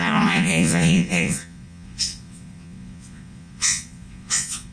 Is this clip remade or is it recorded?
remade